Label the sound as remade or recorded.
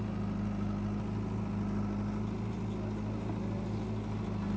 recorded